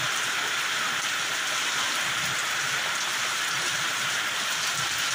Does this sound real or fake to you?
real